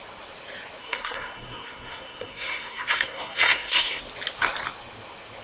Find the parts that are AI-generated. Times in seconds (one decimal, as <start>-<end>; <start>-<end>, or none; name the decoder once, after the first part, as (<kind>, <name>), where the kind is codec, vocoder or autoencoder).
0.8-4.0 (codec, SNAC)